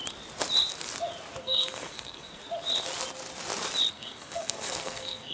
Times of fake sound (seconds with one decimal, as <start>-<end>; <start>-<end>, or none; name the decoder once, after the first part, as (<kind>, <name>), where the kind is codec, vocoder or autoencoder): 1.4-2.4 (codec, SNAC); 3.9-5.3